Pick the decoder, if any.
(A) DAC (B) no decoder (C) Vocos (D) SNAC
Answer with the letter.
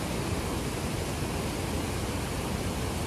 B